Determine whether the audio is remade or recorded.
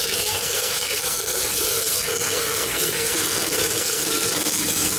remade